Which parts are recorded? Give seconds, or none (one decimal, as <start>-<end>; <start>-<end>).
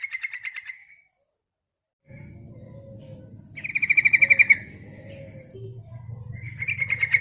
0.0-7.2